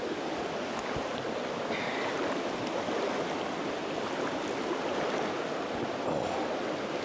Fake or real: real